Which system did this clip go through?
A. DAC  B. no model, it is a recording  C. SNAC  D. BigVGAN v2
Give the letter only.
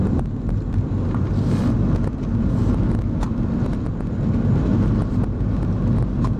B